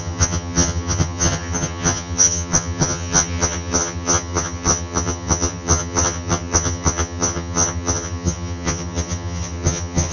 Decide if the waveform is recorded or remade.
remade